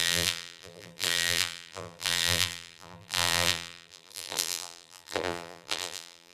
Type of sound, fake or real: fake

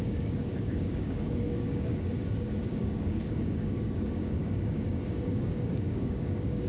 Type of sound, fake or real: fake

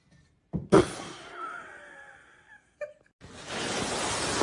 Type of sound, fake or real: real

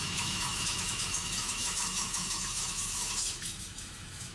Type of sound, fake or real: fake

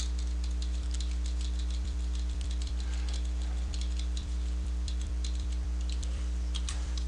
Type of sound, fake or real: fake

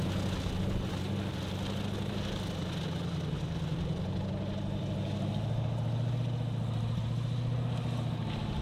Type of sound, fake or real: real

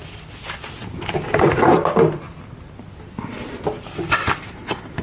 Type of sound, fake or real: real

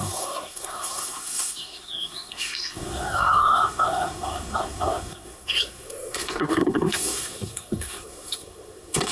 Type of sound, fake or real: fake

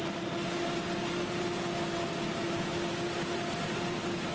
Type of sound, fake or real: real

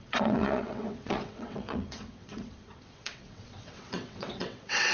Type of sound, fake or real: fake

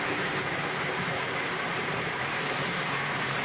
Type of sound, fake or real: fake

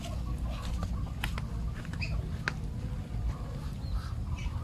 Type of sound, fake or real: real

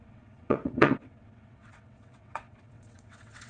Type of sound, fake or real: fake